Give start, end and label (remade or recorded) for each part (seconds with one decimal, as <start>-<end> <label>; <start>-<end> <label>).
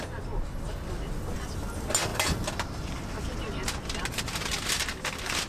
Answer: 0.0-5.5 recorded